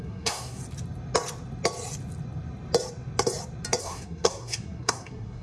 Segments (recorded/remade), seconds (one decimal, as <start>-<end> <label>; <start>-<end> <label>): 0.0-0.6 remade; 0.6-3.8 recorded; 3.8-5.4 remade